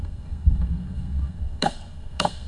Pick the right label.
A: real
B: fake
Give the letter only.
B